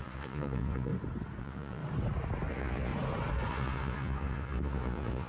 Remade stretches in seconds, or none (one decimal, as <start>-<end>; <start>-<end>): 0.0-0.9; 1.4-1.8; 2.5-2.9; 3.5-5.3

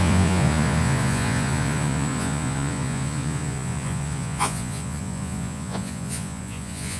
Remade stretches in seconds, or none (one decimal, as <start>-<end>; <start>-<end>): 0.0-7.0

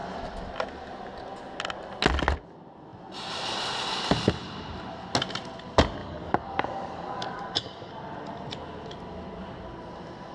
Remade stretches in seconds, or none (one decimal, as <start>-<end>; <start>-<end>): 6.0-7.9